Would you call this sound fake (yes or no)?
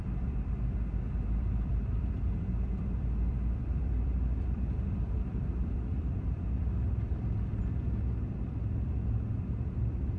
yes